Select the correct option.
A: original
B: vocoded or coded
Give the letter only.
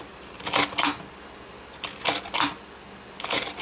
A